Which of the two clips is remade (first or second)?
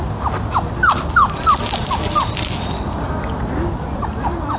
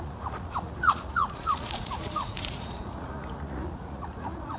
second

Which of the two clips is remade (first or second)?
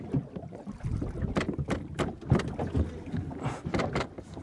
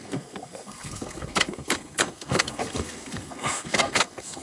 second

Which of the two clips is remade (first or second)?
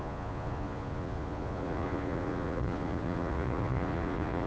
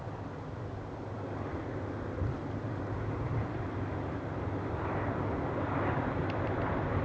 first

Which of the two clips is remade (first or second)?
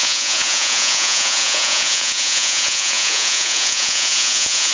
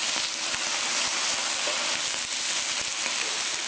first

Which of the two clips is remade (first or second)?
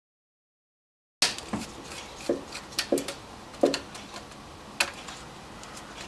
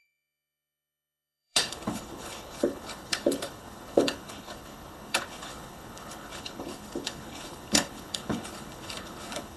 second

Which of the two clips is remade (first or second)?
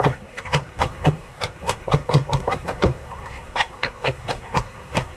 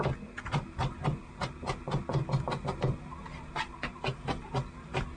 first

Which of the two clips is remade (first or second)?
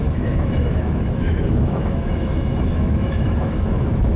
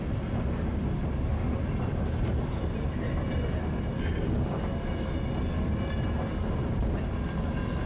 first